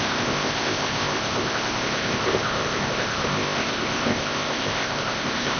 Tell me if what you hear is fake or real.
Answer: fake